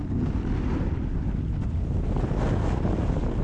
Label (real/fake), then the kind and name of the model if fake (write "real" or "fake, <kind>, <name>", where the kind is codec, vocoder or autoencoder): real